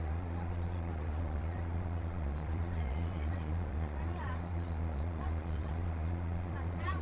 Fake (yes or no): yes